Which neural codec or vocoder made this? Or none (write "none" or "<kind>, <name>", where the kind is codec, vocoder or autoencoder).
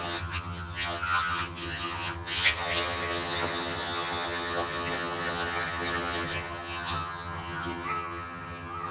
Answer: vocoder, HiFi-GAN